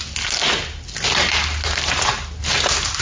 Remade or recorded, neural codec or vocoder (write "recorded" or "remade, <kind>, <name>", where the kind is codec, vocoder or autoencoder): recorded